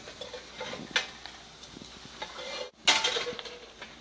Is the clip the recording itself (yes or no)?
yes